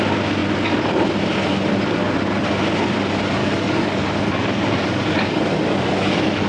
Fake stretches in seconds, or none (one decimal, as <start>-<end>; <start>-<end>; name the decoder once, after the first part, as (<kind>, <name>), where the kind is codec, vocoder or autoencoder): 3.4-6.5 (codec, DAC)